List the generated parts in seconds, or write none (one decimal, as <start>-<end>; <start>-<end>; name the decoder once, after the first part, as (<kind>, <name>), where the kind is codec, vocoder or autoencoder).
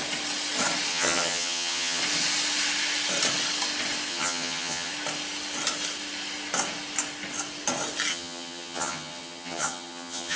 0.9-2.0 (vocoder, HiFi-GAN); 4.1-4.9; 8.1-10.4